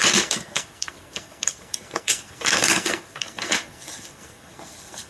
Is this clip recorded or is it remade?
remade